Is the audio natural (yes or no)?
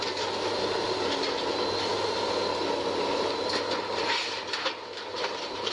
yes